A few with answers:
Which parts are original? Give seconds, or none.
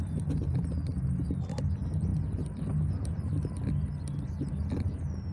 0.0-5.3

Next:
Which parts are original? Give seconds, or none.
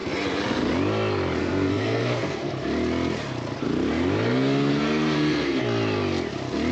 0.0-1.4; 2.5-4.7; 5.6-6.7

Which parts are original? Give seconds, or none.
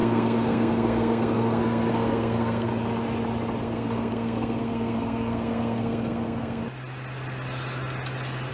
2.7-3.6; 6.6-8.5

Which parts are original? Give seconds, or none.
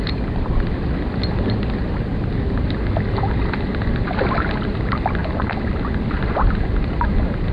0.0-7.5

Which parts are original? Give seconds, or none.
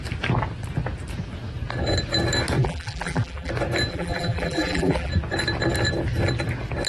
0.0-2.6; 3.5-3.9; 5.1-6.9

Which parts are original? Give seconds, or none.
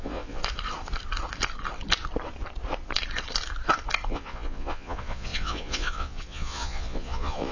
0.4-4.1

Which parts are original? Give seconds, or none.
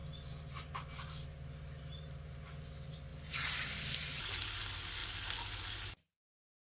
0.0-6.6